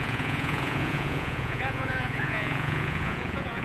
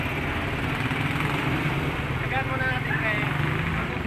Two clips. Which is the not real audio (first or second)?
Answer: first